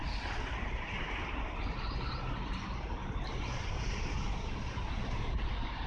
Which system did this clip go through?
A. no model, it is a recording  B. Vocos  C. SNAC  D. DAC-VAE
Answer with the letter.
A